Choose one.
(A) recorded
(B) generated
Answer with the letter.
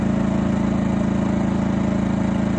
A